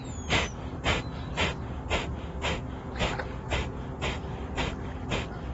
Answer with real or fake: real